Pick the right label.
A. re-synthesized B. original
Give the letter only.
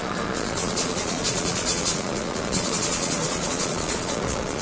A